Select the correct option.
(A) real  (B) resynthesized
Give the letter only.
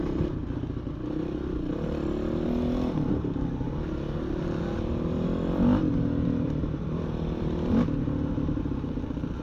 A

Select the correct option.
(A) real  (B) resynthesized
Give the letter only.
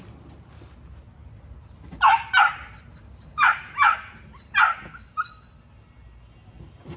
A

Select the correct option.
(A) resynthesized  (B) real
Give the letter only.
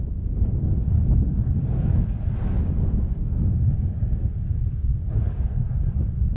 B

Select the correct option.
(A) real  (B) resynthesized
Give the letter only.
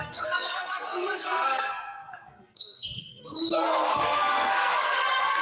B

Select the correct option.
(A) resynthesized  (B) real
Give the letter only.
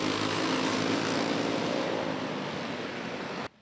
B